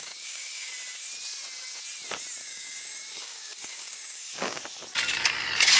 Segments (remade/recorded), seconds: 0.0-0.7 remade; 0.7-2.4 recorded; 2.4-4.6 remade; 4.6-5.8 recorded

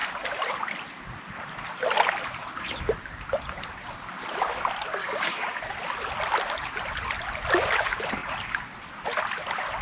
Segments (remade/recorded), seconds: 0.0-5.0 recorded; 5.0-5.6 remade; 5.6-9.8 recorded